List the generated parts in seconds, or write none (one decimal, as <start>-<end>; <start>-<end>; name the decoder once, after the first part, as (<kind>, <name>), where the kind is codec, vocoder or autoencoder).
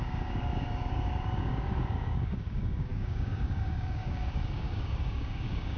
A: 0.0-5.8 (codec, DAC)